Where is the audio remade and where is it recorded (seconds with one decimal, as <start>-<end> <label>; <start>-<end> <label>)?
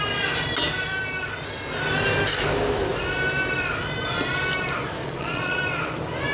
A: 0.0-5.0 recorded; 5.0-5.6 remade; 5.6-6.3 recorded